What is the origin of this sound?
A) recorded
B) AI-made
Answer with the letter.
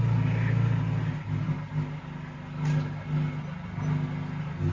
A